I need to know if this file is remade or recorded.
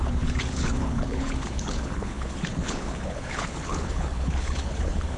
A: remade